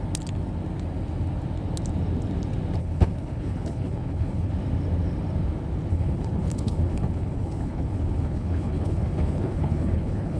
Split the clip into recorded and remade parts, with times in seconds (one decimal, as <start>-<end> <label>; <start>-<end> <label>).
0.0-2.8 recorded; 2.8-4.5 remade; 4.5-5.9 recorded; 5.9-10.4 remade